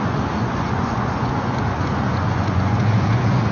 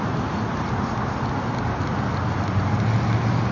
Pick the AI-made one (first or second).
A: first